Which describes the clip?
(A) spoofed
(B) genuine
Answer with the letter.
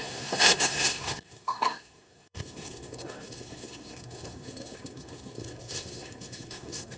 A